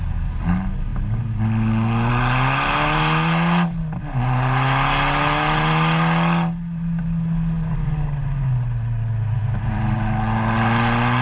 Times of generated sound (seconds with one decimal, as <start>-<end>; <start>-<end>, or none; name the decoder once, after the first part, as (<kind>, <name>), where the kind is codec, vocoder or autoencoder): none